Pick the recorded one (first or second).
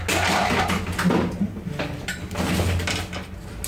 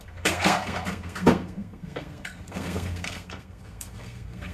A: first